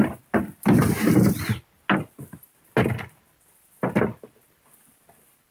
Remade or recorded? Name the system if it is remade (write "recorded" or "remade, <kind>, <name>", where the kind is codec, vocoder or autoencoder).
recorded